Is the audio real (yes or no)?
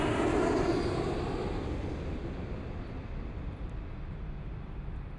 yes